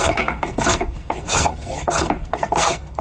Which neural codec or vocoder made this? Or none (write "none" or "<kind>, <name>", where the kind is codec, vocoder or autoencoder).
codec, SNAC